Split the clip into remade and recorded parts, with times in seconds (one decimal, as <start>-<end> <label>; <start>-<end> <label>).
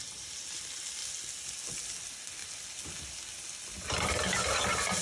0.0-5.0 recorded